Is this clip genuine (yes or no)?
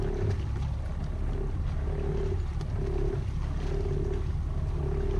yes